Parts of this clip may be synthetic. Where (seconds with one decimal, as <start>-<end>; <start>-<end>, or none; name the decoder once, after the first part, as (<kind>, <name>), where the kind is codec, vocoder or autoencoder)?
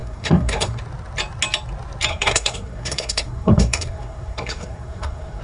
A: 0.0-0.8 (codec, SNAC); 2.1-5.4